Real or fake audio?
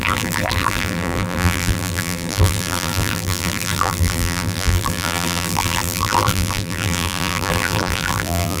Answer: fake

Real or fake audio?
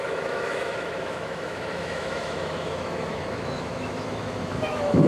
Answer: fake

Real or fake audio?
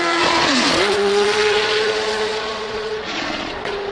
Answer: fake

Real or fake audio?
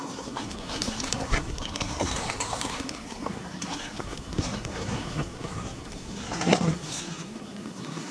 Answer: fake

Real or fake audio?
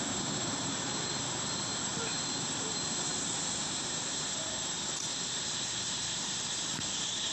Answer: fake